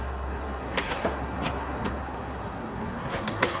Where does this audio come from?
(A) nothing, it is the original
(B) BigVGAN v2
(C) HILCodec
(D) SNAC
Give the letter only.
D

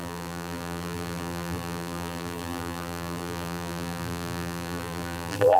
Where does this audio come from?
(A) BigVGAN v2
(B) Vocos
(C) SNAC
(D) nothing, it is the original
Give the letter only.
A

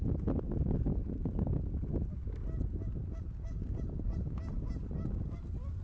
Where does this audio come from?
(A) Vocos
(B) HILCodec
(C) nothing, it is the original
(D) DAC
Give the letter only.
C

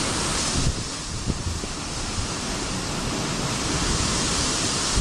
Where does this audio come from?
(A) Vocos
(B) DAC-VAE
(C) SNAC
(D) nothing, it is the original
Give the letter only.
D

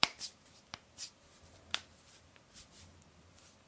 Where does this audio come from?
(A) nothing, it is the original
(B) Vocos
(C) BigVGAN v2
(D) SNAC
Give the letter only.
A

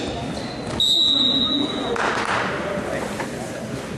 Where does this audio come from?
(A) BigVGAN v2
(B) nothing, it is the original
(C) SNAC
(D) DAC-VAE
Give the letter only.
B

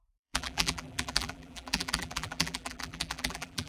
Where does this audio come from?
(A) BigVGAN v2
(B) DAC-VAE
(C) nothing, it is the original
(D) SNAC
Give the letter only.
A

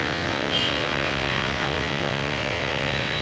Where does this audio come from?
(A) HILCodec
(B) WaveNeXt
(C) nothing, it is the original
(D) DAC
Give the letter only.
B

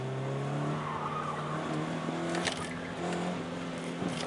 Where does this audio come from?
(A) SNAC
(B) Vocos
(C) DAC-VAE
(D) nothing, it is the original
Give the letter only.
D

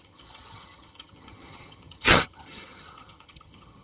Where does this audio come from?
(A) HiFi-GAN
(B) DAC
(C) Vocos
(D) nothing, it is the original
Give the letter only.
A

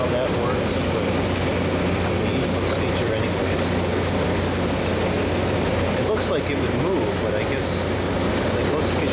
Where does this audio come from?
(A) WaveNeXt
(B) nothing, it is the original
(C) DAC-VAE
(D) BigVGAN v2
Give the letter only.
B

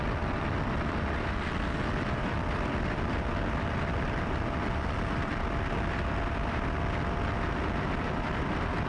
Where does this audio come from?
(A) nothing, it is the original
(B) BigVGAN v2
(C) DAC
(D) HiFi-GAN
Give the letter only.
B